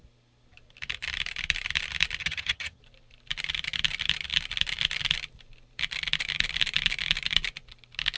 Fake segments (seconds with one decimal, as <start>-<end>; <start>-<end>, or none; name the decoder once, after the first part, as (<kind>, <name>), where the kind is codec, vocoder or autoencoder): 2.2-2.8 (vocoder, HiFi-GAN)